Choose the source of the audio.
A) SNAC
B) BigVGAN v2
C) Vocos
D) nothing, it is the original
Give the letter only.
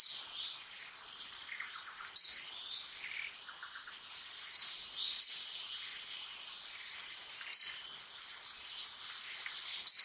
D